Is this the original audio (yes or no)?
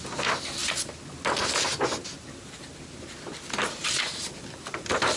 yes